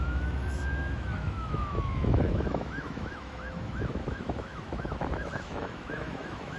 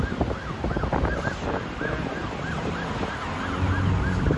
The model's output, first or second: first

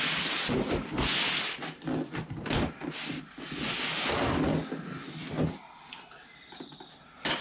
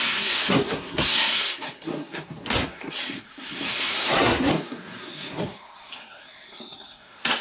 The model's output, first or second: second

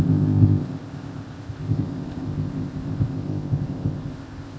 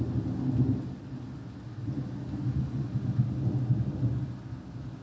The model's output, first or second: first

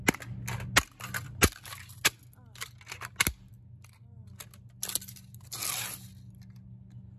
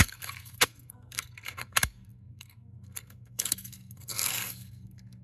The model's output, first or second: second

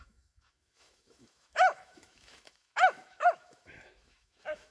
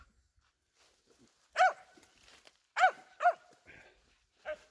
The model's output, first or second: first